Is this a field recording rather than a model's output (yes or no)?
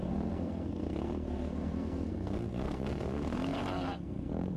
no